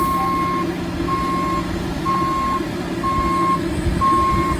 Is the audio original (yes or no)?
yes